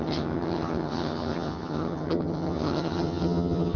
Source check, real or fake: fake